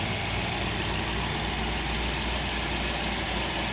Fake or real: real